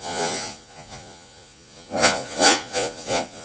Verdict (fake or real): fake